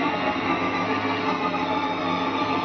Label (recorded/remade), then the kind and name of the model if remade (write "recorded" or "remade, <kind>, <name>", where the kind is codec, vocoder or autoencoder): remade, codec, SNAC